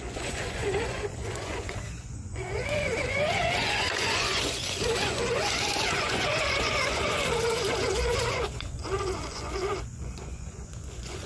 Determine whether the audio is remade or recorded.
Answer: remade